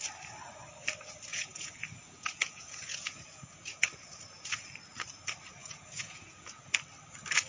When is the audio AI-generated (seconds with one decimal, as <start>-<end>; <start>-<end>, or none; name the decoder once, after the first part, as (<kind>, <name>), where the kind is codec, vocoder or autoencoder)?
1.3-4.7 (vocoder, Vocos); 5.6-6.7